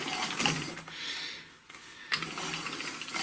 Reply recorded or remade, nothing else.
recorded